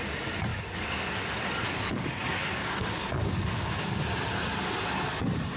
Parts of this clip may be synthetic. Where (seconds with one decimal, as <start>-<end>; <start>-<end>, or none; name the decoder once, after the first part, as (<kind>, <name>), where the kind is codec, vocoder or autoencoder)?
0.5-1.2 (codec, DAC); 1.6-3.9